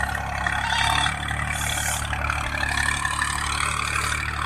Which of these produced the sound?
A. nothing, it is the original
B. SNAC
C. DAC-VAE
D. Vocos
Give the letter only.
A